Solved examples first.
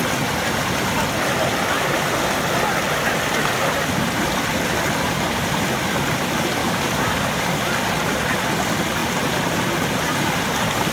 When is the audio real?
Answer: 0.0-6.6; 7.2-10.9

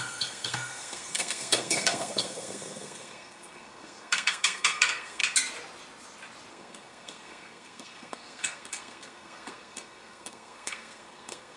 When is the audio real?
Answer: 5.2-6.5

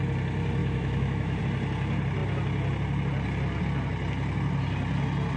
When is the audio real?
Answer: 0.0-0.6; 1.4-5.4

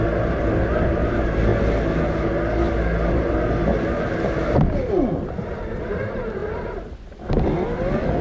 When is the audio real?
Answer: 1.5-3.1; 3.7-5.4; 6.4-8.2